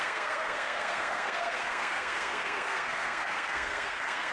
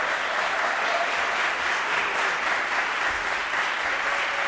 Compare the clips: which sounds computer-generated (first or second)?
first